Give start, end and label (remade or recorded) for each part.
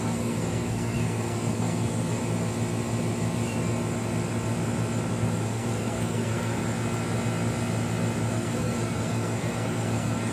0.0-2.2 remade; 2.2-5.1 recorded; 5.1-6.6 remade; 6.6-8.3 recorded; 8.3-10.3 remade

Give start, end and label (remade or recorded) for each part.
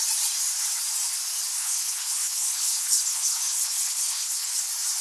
0.0-1.6 recorded; 1.6-4.6 remade; 4.6-5.0 recorded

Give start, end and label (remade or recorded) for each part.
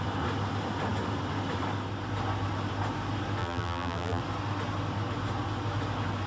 0.0-3.4 recorded; 3.4-4.2 remade; 4.2-6.3 recorded